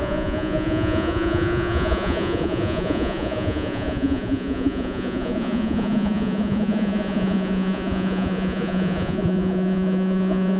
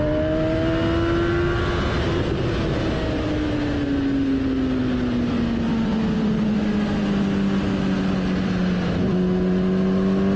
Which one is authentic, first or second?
second